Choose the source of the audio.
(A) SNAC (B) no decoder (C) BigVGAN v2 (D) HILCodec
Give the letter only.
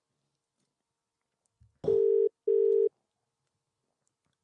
B